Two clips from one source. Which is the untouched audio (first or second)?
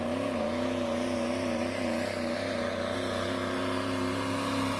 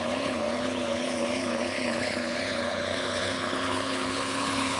first